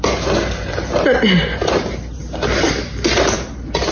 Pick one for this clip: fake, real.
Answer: real